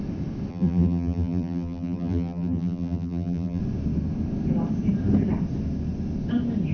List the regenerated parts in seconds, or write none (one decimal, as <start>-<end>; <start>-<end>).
0.5-3.6